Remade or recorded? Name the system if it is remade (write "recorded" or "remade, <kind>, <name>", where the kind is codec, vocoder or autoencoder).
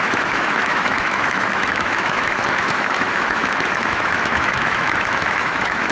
remade, autoencoder, DAC-VAE